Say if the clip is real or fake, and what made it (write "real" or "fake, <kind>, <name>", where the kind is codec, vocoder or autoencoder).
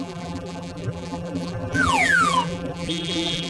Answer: fake, vocoder, BigVGAN v2